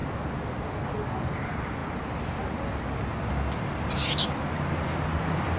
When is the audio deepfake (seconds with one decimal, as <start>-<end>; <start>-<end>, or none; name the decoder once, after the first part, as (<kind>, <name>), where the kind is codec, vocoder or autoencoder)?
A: none